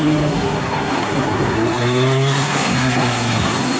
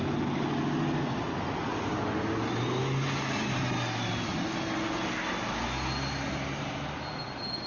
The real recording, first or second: second